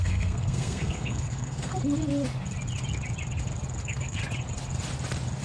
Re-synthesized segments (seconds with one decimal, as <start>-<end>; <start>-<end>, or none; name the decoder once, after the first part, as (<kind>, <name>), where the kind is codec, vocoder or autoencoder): 0.0-1.7 (codec, SNAC); 3.8-4.2